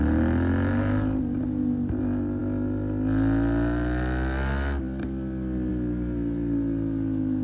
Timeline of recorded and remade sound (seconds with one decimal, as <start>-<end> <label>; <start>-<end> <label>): 0.0-7.4 recorded